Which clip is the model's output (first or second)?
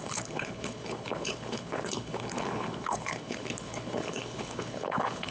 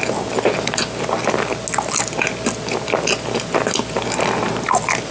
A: first